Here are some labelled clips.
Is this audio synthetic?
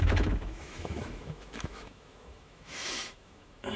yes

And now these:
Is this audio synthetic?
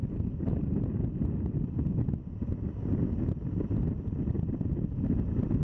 no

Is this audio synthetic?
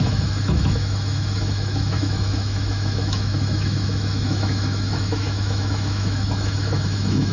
yes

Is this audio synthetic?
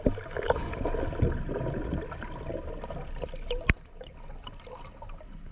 no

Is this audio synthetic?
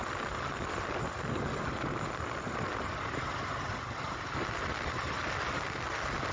no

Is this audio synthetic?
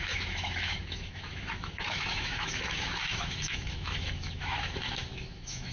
yes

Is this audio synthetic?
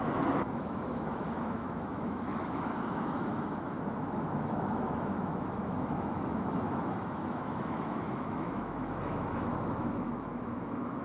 yes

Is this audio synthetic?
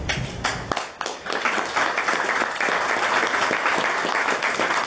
no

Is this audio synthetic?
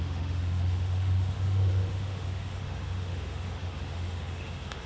yes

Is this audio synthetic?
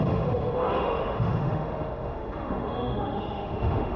yes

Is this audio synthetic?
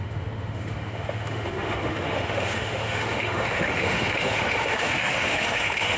yes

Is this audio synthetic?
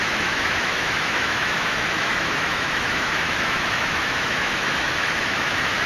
yes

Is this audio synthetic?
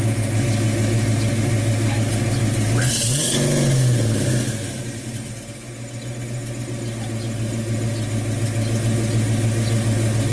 no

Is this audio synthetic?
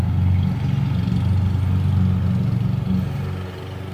no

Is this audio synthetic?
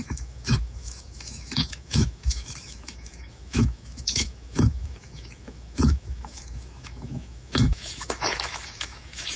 yes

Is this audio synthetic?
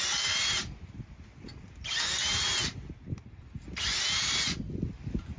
no